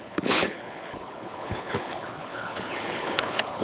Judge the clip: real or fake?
fake